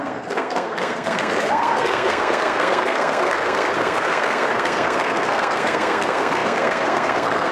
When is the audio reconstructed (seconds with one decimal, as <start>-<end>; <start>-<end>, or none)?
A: 0.0-7.5